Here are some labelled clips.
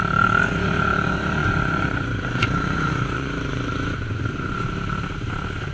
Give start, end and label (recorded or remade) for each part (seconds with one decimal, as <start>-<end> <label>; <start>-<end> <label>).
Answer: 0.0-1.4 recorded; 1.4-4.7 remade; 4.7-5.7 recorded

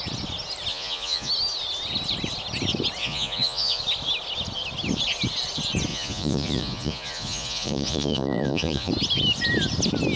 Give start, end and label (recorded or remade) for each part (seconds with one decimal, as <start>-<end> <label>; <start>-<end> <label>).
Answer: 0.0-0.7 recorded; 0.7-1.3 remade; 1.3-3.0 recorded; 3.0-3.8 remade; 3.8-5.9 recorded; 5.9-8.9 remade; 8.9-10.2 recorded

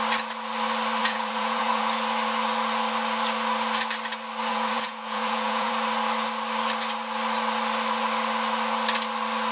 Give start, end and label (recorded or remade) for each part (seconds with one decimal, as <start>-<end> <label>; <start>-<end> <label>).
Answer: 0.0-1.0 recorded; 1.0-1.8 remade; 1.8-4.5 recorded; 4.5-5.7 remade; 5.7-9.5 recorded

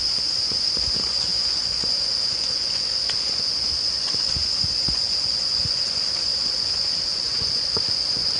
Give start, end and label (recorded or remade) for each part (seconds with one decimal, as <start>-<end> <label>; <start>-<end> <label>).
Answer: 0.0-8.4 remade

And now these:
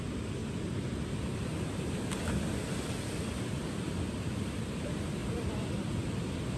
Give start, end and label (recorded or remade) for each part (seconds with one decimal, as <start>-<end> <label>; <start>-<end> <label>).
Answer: 0.0-6.6 recorded

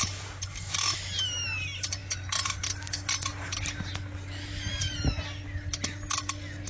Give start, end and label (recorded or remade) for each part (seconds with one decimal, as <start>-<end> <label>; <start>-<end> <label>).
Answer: 0.0-6.7 recorded

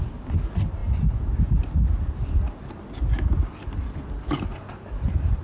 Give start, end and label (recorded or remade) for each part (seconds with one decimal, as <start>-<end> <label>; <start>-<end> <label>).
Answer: 0.0-5.4 recorded